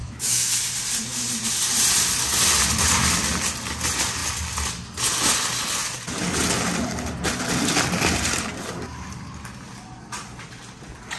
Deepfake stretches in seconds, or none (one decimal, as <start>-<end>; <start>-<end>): 0.0-0.5

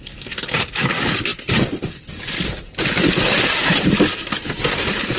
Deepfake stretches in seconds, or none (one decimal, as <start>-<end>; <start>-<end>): none

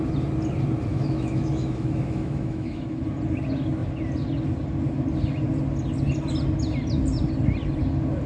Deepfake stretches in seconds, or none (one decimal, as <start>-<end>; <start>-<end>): 0.9-3.0

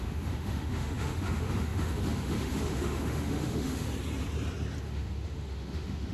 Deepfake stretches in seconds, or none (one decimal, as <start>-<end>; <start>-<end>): 0.0-3.9; 4.8-6.1

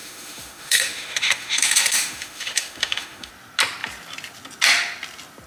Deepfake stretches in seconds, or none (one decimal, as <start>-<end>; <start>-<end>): 0.0-3.3